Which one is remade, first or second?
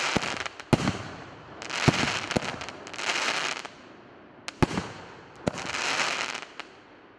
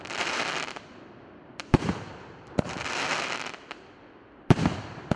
second